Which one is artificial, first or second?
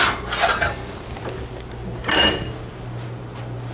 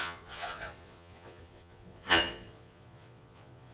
second